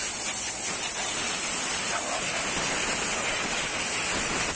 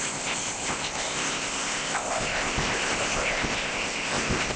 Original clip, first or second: first